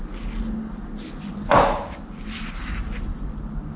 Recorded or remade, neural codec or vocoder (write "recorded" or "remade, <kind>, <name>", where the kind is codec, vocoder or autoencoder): recorded